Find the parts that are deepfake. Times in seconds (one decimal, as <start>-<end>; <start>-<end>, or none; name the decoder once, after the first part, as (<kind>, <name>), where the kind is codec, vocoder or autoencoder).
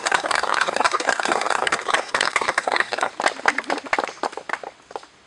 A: 0.0-3.1 (codec, SNAC)